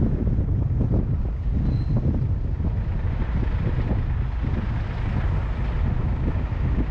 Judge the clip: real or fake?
real